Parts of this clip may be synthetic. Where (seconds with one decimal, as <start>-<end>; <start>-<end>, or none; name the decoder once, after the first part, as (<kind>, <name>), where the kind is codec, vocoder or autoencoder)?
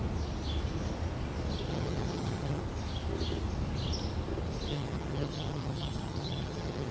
1.7-2.6 (vocoder, HiFi-GAN); 4.7-6.9